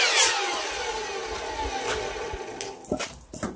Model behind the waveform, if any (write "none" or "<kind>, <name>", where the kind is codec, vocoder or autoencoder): none